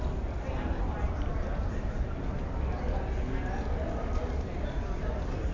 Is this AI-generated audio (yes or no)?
no